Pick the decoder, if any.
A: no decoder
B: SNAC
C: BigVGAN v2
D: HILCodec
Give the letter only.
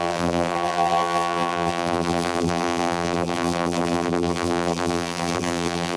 C